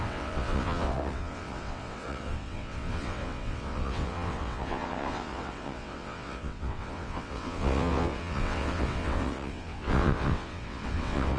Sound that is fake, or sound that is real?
fake